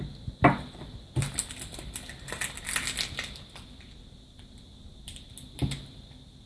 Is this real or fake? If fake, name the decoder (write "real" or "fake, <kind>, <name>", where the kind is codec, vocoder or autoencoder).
real